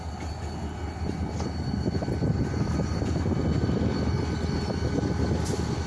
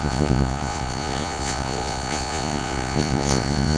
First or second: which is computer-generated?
second